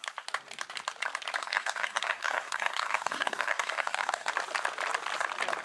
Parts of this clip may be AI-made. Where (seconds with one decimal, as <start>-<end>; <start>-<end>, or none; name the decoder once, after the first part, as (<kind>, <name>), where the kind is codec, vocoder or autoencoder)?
1.4-4.3 (codec, SNAC)